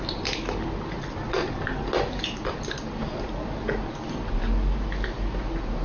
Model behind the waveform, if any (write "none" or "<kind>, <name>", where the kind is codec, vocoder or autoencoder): none